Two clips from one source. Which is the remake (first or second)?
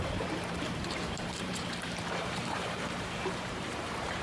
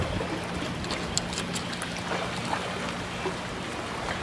first